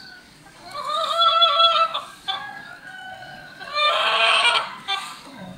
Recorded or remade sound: remade